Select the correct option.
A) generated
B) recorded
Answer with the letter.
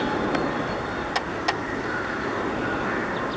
B